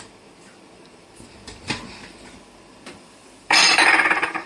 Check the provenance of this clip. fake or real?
fake